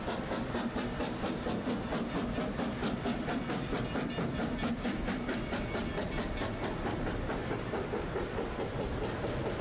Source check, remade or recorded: recorded